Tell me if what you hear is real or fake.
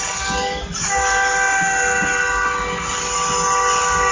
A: real